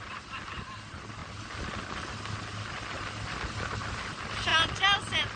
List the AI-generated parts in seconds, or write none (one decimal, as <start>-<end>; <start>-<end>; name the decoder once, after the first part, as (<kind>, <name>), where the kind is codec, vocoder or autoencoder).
none